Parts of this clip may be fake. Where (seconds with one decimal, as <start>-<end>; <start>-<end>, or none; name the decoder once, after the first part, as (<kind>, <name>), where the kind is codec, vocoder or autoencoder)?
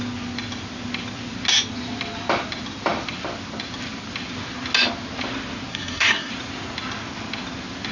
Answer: 5.7-6.3 (codec, SNAC)